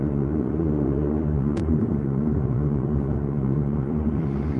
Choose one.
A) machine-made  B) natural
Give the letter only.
A